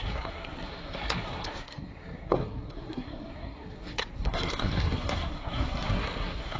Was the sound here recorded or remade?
remade